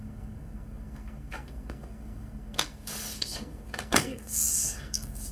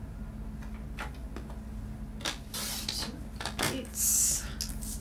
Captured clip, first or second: second